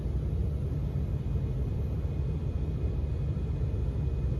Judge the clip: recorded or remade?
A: recorded